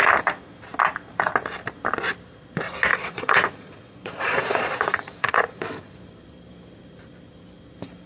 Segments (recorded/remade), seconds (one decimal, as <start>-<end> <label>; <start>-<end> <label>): 0.0-2.9 recorded; 2.9-6.0 remade; 6.0-8.1 recorded